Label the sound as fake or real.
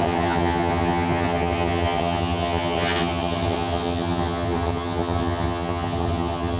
fake